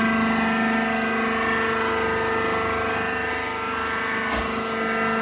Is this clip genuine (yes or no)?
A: yes